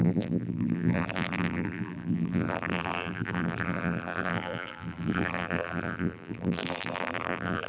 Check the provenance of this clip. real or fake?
fake